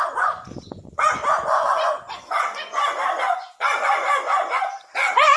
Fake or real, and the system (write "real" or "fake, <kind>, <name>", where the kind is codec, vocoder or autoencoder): fake, vocoder, Vocos